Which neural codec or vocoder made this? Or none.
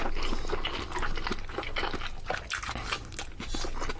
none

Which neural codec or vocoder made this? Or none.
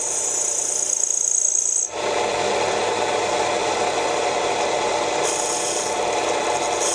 none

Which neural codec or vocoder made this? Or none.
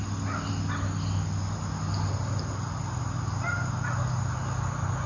none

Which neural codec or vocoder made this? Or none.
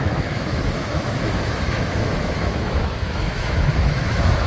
autoencoder, DAC-VAE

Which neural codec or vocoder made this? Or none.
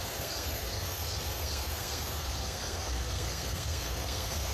codec, SNAC